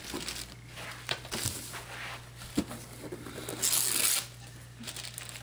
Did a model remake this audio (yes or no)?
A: no